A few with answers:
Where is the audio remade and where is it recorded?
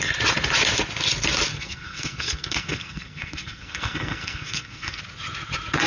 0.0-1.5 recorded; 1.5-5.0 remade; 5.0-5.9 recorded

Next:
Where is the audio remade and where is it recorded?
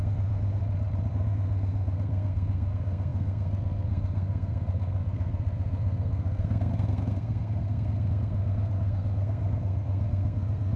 0.0-0.6 remade; 0.6-1.1 recorded; 1.1-10.8 remade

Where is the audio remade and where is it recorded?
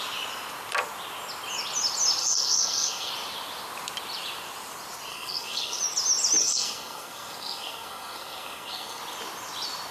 0.0-2.2 recorded; 2.2-3.1 remade; 3.1-5.1 recorded; 5.1-5.8 remade; 5.8-6.4 recorded; 6.4-9.0 remade; 9.0-9.9 recorded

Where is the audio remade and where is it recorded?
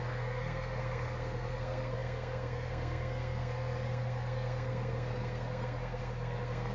0.0-6.7 remade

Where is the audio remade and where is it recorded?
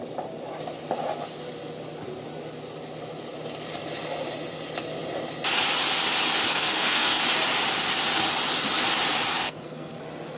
0.0-6.5 recorded; 6.5-7.2 remade; 7.2-9.3 recorded; 9.3-10.0 remade; 10.0-10.4 recorded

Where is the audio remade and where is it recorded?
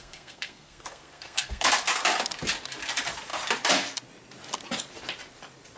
0.0-1.7 remade; 1.7-5.8 recorded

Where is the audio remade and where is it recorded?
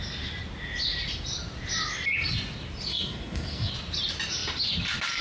0.0-2.9 recorded; 2.9-3.7 remade; 3.7-5.2 recorded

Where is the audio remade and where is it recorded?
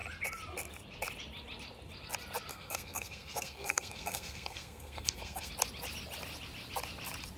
0.0-2.5 recorded; 2.5-5.5 remade; 5.5-7.4 recorded